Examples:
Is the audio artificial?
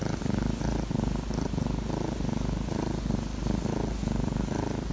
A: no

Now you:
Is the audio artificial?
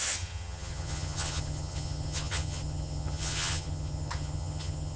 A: yes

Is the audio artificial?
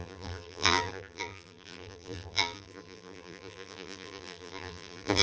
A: yes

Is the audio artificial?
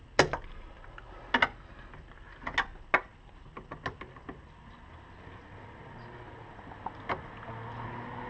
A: no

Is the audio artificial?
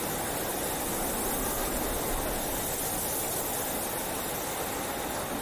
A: no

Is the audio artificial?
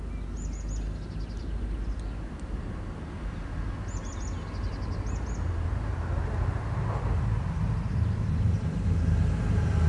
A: no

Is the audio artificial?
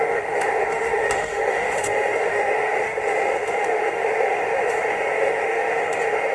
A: yes